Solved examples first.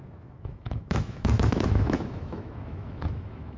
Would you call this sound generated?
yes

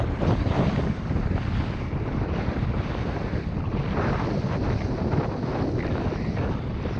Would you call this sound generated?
no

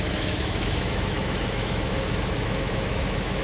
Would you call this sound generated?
yes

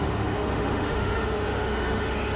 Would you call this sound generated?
yes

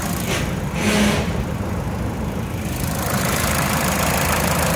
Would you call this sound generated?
no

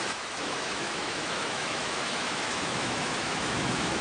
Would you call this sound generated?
yes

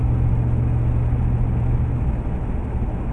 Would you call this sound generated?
no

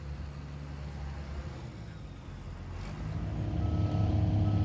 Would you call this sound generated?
no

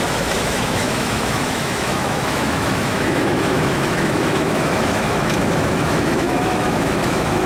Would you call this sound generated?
yes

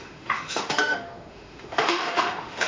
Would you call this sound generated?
yes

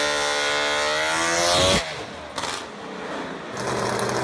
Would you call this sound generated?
no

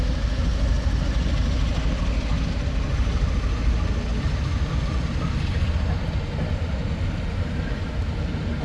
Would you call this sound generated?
no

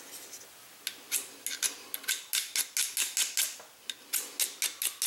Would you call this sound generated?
no